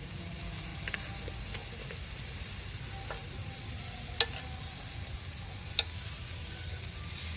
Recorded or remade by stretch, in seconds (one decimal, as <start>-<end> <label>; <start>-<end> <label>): 0.0-7.4 recorded